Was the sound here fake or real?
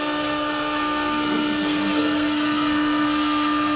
fake